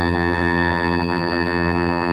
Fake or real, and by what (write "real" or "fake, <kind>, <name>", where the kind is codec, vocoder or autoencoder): fake, vocoder, BigVGAN v2